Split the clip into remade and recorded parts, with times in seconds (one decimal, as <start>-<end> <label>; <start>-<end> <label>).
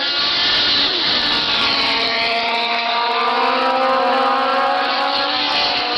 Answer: 0.0-0.9 recorded; 0.9-3.3 remade; 3.3-4.5 recorded; 4.5-5.4 remade; 5.4-6.0 recorded